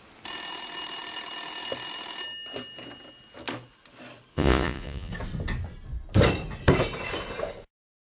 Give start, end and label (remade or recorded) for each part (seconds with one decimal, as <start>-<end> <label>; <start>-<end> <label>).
0.0-4.3 recorded; 4.3-5.1 remade; 5.1-8.0 recorded